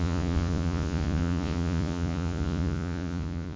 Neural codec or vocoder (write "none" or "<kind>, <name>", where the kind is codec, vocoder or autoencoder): vocoder, Vocos